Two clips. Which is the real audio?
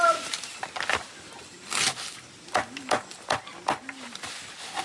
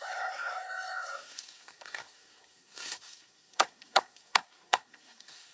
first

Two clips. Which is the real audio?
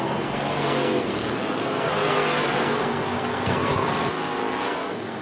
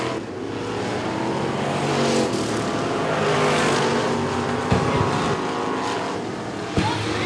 second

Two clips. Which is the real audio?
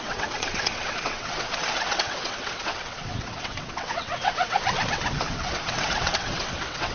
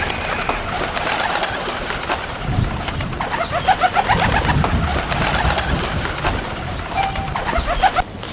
second